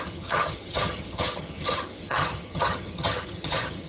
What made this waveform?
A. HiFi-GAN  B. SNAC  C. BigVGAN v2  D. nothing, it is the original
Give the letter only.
A